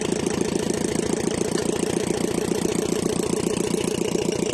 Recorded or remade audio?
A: recorded